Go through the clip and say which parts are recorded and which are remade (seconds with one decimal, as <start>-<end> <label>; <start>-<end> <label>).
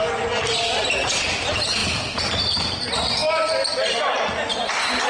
0.0-5.1 recorded